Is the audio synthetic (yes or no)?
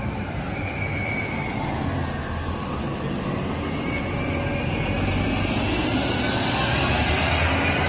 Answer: no